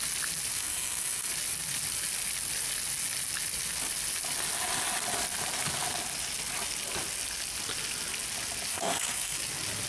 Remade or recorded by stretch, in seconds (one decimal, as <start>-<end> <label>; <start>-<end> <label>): 0.0-0.5 recorded; 0.5-1.3 remade; 1.3-8.7 recorded; 8.7-9.4 remade; 9.4-9.9 recorded